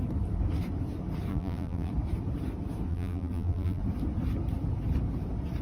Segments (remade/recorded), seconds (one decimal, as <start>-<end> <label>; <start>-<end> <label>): 0.0-1.3 recorded; 1.3-1.9 remade; 1.9-2.9 recorded; 2.9-3.8 remade; 3.8-5.6 recorded